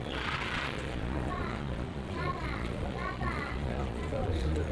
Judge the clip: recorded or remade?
remade